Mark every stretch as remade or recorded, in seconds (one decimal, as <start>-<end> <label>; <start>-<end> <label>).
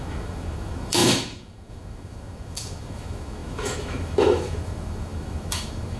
0.0-6.0 remade